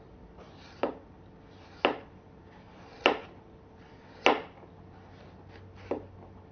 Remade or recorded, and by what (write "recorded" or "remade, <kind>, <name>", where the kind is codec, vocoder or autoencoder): recorded